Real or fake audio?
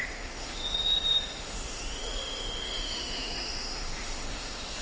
fake